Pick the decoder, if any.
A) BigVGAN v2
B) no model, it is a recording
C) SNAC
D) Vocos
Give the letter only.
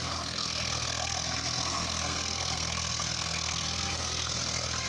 C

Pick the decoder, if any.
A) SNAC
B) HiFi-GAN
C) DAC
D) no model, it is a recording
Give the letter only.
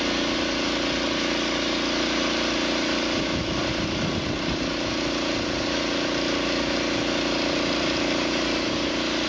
D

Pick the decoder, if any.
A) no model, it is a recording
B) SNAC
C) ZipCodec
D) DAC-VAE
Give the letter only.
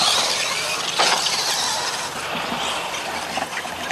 A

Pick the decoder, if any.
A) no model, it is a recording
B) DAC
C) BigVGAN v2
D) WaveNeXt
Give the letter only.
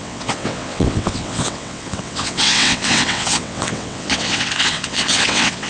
D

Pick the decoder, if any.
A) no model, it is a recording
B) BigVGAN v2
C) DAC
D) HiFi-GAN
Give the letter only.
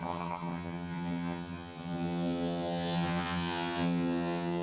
D